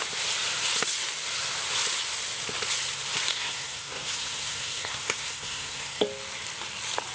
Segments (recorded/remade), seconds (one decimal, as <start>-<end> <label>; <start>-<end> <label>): 0.0-3.3 recorded; 3.3-6.0 remade; 6.0-7.1 recorded